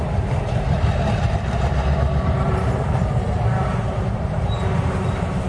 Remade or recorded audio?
remade